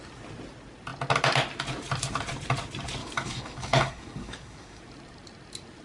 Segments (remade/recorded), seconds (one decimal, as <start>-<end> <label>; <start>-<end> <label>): 0.0-3.0 recorded; 3.0-4.8 remade; 4.8-5.8 recorded